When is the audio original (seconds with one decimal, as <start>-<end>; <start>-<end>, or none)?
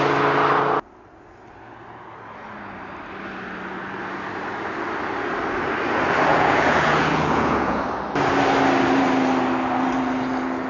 0.0-6.3; 7.8-10.7